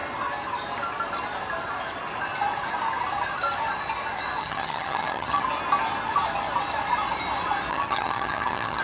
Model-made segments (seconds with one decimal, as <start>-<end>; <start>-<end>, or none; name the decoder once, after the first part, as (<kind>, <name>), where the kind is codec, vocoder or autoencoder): 4.4-5.4 (vocoder, HiFi-GAN); 7.7-8.8